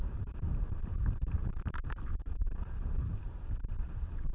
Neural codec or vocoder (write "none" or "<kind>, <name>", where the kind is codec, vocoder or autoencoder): vocoder, BigVGAN v2